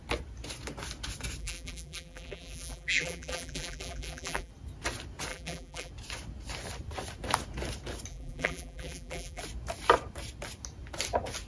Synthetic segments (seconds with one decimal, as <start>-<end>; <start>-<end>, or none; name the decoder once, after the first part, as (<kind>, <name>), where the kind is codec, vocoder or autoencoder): 1.4-4.5 (vocoder, BigVGAN v2); 5.3-5.9; 8.1-9.4